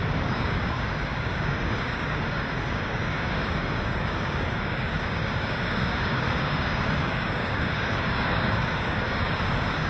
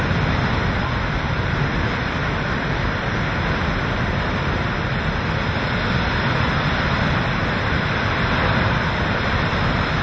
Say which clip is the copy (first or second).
first